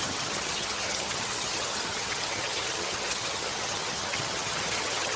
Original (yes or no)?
no